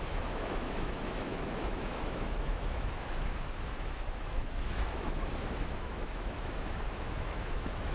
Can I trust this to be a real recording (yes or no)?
no